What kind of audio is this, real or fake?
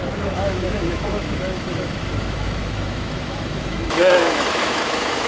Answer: fake